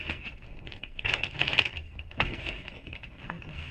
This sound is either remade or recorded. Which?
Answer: remade